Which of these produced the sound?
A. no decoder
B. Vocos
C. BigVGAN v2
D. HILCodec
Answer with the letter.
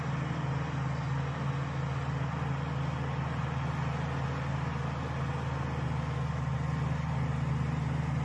A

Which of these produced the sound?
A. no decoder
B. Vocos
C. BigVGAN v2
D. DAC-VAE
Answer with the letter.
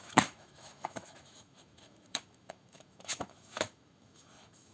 D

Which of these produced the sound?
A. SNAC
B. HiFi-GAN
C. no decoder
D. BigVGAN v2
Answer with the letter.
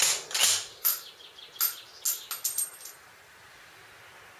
C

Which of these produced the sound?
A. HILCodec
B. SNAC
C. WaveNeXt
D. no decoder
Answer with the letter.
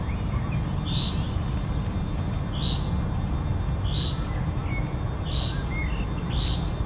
D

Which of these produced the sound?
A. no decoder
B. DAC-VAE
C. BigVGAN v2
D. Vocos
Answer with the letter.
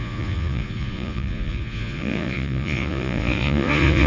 D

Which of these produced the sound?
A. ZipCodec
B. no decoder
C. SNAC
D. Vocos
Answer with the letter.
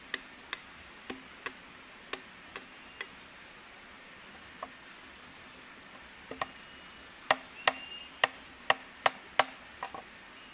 B